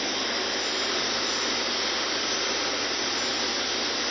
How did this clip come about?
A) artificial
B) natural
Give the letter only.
B